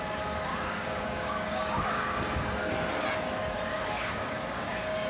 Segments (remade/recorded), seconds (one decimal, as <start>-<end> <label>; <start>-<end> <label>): 0.0-0.5 recorded; 0.5-2.2 remade; 2.2-3.7 recorded; 3.7-5.1 remade

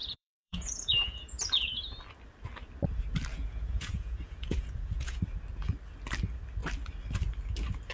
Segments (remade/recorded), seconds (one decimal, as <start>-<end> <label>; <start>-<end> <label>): 0.0-1.8 remade; 1.8-3.3 recorded; 3.3-5.2 remade; 5.2-7.9 recorded

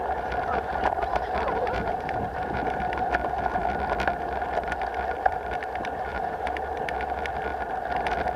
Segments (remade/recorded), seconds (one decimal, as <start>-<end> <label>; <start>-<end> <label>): 0.0-0.5 recorded; 0.5-2.8 remade; 2.8-6.1 recorded; 6.1-6.7 remade; 6.7-8.4 recorded

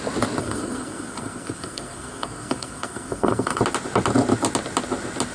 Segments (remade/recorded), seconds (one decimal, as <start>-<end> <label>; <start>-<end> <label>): 0.0-0.4 recorded; 0.4-3.6 remade; 3.6-5.3 recorded

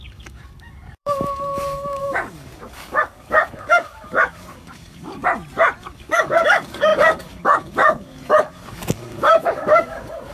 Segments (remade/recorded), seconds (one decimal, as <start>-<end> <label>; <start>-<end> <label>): 0.0-5.2 remade; 5.2-5.8 recorded; 5.8-10.3 remade

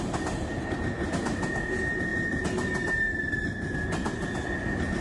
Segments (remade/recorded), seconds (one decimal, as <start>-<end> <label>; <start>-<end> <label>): 0.0-5.0 recorded

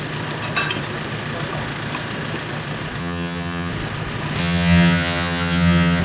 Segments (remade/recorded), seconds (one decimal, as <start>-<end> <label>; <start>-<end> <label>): 0.0-3.0 recorded; 3.0-3.7 remade; 3.7-4.4 recorded; 4.4-6.0 remade